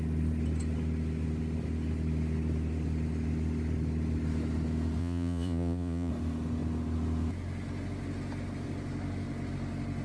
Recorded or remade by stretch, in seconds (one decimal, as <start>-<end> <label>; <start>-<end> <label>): 0.0-5.0 recorded; 5.0-6.1 remade; 6.1-10.0 recorded